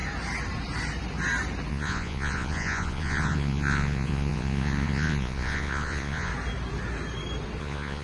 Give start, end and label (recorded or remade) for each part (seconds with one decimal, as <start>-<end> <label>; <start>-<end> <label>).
0.0-1.7 recorded; 1.7-6.3 remade; 6.3-7.6 recorded; 7.6-8.0 remade